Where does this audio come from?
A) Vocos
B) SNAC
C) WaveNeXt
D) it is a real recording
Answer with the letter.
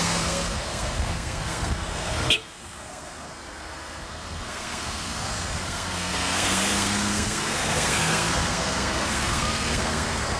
B